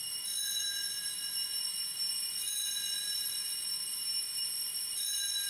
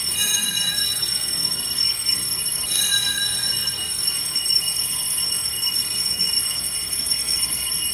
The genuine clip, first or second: first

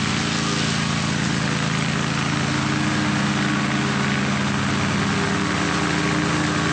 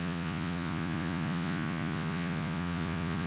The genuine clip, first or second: first